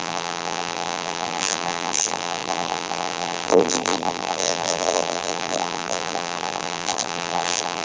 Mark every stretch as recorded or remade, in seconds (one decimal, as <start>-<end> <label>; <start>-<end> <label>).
0.0-7.8 remade